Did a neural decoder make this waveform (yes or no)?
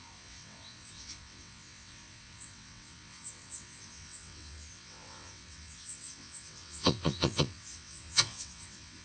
yes